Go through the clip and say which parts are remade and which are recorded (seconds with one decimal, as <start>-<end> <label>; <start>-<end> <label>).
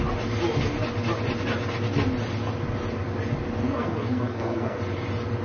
0.0-3.6 recorded; 3.6-4.8 remade; 4.8-5.4 recorded